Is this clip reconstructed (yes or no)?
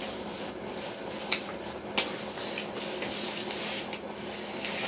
no